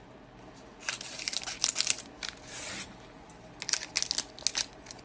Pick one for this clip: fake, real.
real